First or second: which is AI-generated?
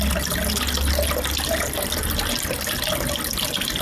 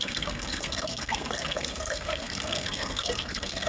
second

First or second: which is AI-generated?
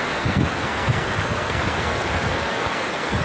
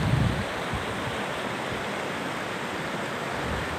first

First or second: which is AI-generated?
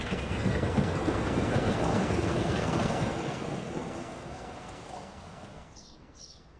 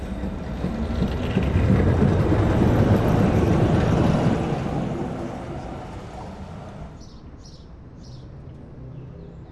first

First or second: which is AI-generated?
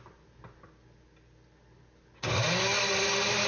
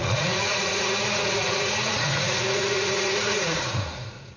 second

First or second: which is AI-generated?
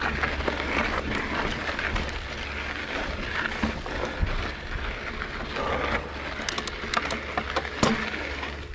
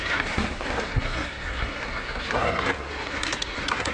second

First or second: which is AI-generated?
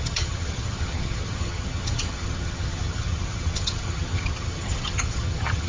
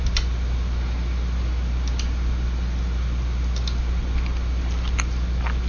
first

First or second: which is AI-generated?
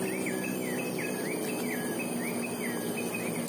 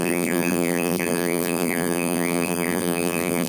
second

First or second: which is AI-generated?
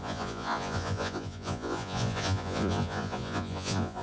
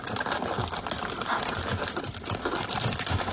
first